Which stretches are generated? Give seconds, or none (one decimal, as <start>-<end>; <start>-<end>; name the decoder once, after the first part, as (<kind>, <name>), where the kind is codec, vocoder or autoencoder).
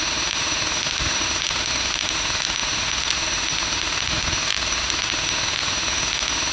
0.0-6.5 (autoencoder, DAC-VAE)